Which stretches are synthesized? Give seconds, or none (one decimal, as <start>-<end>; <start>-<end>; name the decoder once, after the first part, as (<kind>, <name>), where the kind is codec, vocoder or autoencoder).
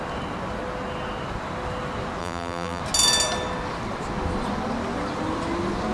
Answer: 2.2-2.8 (vocoder, BigVGAN v2)